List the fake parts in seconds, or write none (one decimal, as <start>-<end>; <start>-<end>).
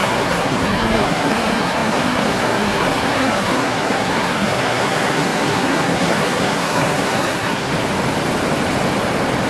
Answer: 0.0-7.7